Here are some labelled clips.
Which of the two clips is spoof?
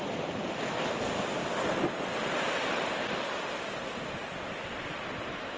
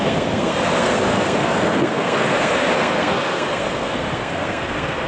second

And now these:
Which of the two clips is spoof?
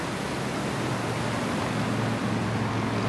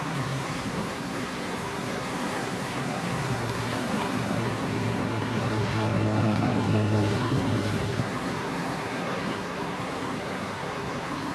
second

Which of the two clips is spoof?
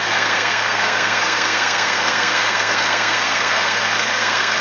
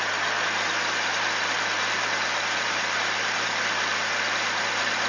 first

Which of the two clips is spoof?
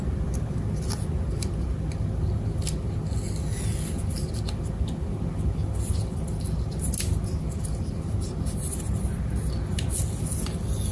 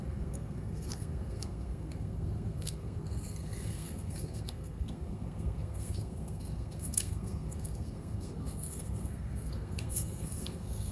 second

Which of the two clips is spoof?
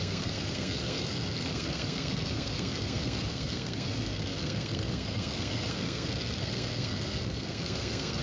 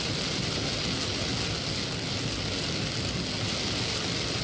first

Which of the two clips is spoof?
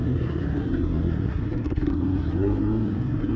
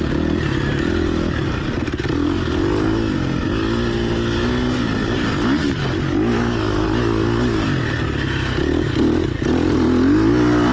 first